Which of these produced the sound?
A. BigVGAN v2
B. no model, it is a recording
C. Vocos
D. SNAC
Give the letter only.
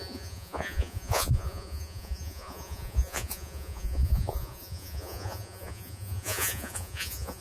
C